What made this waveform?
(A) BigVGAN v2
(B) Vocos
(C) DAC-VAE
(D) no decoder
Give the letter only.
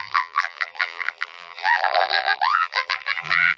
A